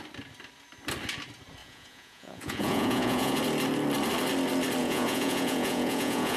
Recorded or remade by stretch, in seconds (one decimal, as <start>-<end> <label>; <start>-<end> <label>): 0.0-1.6 recorded; 1.6-3.4 remade; 3.4-4.8 recorded; 4.8-6.4 remade